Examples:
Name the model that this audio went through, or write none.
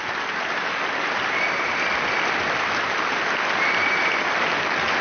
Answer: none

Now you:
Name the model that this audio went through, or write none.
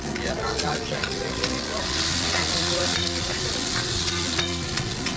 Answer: vocoder, Vocos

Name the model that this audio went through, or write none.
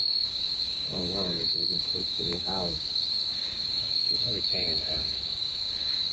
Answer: codec, DAC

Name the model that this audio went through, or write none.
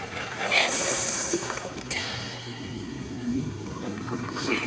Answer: codec, SNAC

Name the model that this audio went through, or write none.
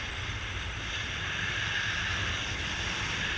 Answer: vocoder, BigVGAN v2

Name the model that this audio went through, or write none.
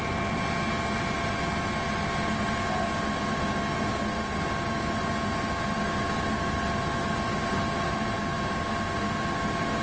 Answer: none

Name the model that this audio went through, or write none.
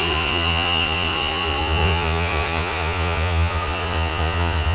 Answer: vocoder, Vocos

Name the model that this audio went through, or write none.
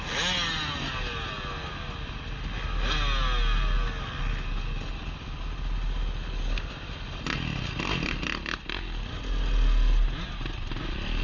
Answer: none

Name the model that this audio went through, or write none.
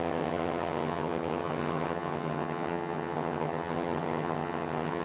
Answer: vocoder, HiFi-GAN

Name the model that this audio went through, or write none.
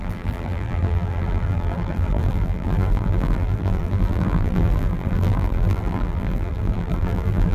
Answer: vocoder, BigVGAN v2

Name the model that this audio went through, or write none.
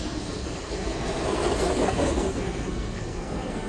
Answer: codec, SNAC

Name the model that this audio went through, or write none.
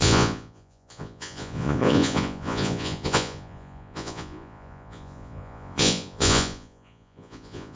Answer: vocoder, Vocos